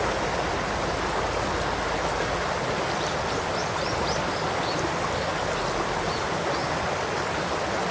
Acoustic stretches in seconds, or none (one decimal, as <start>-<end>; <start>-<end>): 0.0-7.9